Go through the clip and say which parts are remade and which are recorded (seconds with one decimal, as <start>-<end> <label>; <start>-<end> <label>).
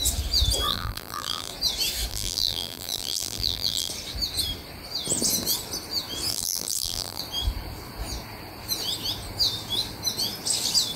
0.0-0.7 recorded; 0.7-1.5 remade; 1.5-2.1 recorded; 2.1-3.9 remade; 3.9-6.3 recorded; 6.3-7.2 remade; 7.2-11.0 recorded